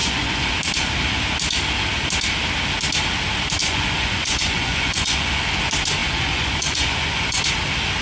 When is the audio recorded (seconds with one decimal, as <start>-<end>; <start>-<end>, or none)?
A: 0.5-3.6; 5.4-6.0; 7.4-8.0